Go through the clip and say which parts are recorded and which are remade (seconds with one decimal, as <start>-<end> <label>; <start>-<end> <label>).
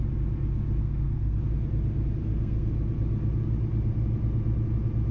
0.0-0.8 recorded; 0.8-1.4 remade; 1.4-2.2 recorded; 2.2-2.7 remade; 2.7-5.1 recorded